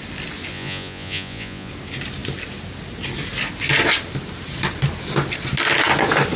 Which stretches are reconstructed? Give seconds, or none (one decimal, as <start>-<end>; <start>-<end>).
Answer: 0.5-1.7

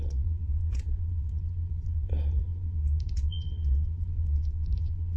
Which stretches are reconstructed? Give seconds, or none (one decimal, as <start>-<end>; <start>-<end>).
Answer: 0.0-5.2

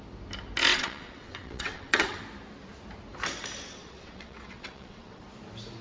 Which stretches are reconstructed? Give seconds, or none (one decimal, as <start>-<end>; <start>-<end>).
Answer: 0.7-2.2; 3.8-5.2

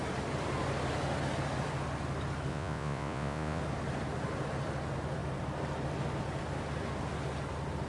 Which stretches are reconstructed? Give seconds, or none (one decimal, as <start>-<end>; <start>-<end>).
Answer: 2.5-3.6

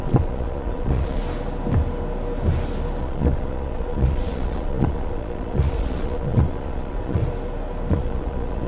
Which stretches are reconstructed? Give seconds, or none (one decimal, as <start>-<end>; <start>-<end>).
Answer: 0.0-1.2; 3.0-7.2; 7.9-8.7